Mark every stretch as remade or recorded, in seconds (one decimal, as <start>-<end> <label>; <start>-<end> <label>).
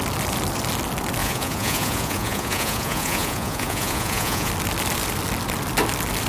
0.0-1.2 recorded; 1.2-4.5 remade; 4.5-6.3 recorded